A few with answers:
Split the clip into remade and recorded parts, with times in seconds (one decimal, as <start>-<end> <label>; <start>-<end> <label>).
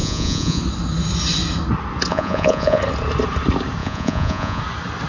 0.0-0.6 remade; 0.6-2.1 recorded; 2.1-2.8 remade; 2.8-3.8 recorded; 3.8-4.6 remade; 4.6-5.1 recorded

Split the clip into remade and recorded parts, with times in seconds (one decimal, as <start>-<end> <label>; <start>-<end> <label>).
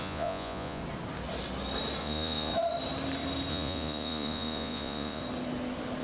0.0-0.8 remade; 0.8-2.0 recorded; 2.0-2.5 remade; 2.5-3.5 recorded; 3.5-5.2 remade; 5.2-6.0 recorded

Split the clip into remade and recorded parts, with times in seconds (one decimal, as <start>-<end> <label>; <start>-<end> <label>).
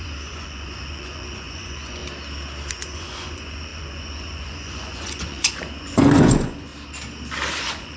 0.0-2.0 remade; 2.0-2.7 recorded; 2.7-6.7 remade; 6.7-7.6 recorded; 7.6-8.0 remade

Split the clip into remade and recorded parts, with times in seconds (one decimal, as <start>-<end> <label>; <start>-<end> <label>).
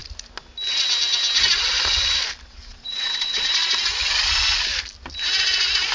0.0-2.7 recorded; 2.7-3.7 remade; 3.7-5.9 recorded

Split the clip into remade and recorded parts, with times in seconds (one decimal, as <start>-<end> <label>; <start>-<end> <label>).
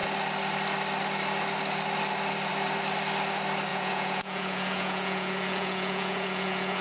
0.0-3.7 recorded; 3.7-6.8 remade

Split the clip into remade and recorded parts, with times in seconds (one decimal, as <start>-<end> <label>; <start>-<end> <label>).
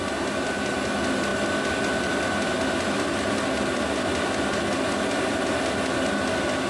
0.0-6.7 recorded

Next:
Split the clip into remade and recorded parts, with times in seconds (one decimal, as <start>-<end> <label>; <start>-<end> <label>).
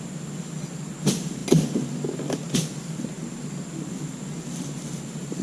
0.0-5.4 recorded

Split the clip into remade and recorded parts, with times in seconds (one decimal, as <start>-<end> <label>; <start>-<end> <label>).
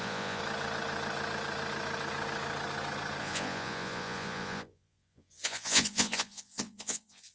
0.0-0.4 remade; 0.4-3.2 recorded; 3.2-7.3 remade